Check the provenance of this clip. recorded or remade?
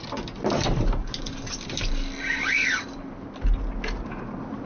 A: recorded